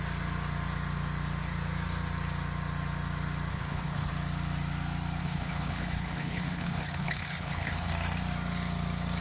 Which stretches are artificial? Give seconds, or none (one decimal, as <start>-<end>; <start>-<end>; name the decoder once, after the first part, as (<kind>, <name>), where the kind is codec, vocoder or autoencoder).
3.5-4.1 (codec, HILCodec); 5.2-7.9